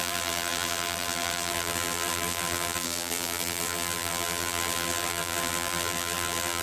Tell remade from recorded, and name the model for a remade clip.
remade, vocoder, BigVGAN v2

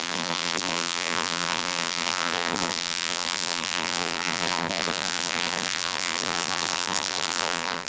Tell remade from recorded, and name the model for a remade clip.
remade, vocoder, BigVGAN v2